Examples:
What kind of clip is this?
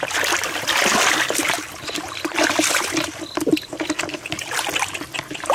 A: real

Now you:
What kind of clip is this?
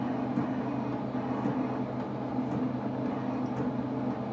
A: real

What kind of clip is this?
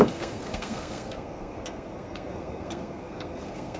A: fake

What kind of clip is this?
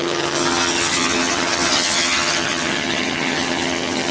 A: fake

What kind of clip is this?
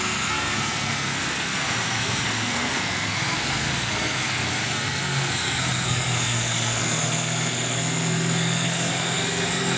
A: fake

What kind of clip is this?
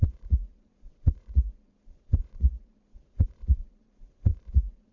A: fake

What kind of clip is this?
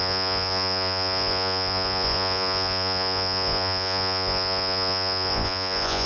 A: fake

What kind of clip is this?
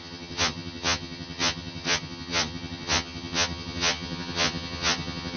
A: fake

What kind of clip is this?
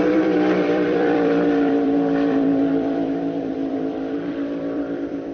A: fake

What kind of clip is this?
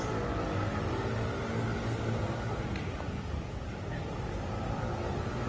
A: real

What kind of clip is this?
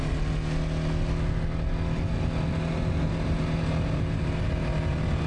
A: real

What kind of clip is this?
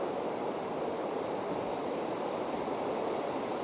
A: real